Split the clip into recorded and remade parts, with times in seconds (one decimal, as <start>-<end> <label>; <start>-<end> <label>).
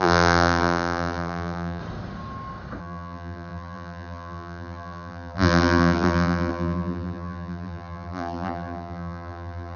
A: 0.0-1.8 remade; 1.8-2.8 recorded; 2.8-9.8 remade